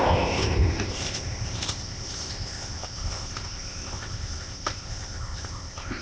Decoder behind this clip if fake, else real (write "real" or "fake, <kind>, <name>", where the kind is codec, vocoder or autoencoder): fake, codec, ZipCodec